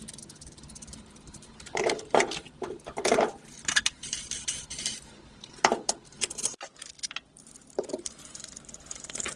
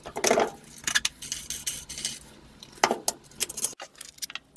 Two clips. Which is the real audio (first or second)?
second